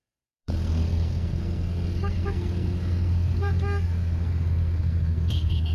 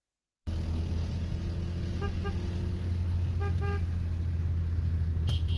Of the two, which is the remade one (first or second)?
first